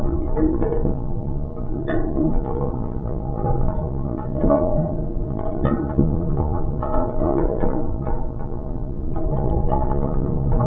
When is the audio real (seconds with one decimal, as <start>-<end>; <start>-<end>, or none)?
none